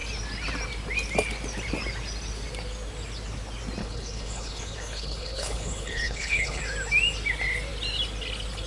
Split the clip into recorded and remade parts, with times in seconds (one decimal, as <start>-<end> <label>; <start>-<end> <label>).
0.0-3.8 recorded; 3.8-6.6 remade; 6.6-8.7 recorded